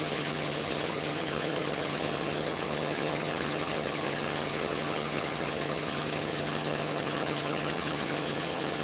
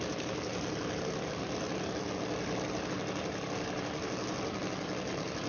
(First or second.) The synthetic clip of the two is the first